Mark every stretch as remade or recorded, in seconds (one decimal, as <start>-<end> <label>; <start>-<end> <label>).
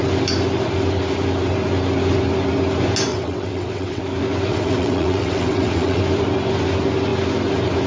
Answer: 0.0-3.1 recorded; 3.1-4.0 remade; 4.0-4.5 recorded; 4.5-6.0 remade; 6.0-7.9 recorded